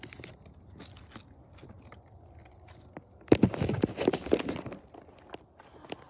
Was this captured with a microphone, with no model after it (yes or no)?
yes